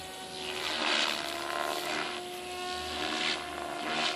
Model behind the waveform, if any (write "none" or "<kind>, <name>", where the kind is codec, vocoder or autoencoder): none